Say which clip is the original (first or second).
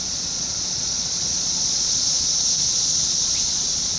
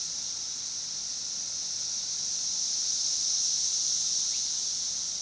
second